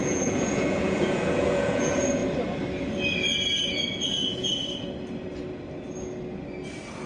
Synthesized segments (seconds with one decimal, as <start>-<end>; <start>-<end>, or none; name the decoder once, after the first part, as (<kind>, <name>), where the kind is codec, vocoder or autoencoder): 0.0-2.2 (vocoder, Vocos); 3.7-4.5